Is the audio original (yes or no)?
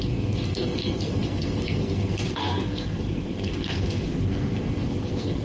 no